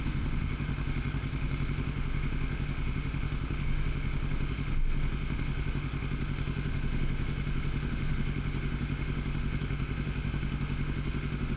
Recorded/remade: remade